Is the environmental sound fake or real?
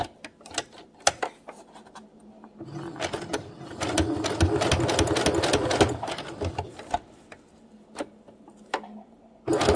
real